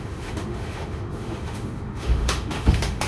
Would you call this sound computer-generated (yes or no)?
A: yes